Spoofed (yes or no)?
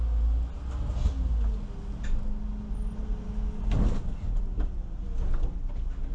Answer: no